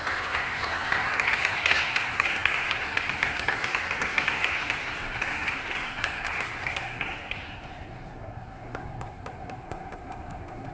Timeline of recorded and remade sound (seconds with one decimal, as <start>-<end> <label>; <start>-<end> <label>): 0.0-10.7 remade